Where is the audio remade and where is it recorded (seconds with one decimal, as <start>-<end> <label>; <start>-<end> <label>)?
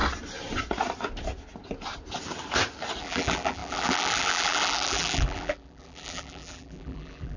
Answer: 0.0-3.0 recorded; 3.0-7.4 remade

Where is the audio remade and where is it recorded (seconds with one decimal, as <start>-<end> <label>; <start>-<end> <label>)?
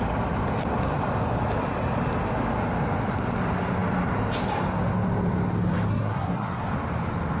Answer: 0.0-5.9 recorded; 5.9-6.7 remade; 6.7-7.4 recorded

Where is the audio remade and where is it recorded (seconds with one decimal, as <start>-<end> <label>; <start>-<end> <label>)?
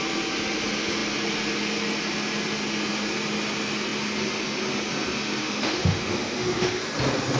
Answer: 0.0-5.4 recorded; 5.4-6.8 remade; 6.8-7.4 recorded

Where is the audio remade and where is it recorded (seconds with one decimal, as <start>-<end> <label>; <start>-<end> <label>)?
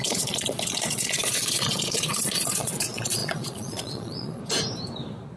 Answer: 0.0-4.4 remade; 4.4-5.4 recorded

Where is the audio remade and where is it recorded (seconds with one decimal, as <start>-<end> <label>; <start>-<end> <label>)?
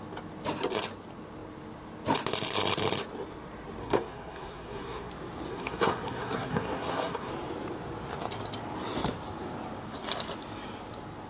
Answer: 0.0-3.8 recorded; 3.8-5.1 remade; 5.1-5.5 recorded; 5.5-7.3 remade; 7.3-11.3 recorded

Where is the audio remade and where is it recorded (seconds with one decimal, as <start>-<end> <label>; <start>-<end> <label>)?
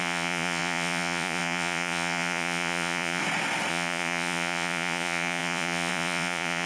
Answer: 0.0-3.2 remade; 3.2-3.7 recorded; 3.7-6.7 remade